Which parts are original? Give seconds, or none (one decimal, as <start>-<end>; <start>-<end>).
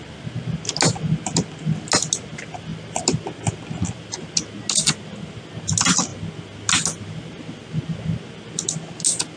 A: 0.0-9.4